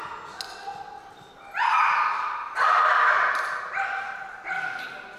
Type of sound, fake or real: real